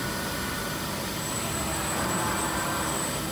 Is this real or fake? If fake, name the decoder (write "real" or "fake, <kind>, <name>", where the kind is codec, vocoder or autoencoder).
fake, vocoder, BigVGAN v2